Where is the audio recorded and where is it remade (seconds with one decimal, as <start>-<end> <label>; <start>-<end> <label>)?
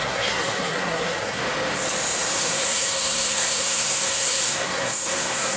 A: 0.0-1.4 remade; 1.4-2.3 recorded; 2.3-5.6 remade